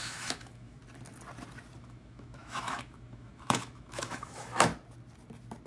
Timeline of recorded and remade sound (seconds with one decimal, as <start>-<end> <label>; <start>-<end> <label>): 0.0-0.8 remade; 0.8-1.8 recorded; 1.8-4.7 remade; 4.7-5.7 recorded